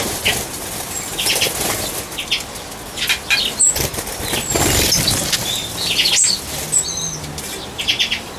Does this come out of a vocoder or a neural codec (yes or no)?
no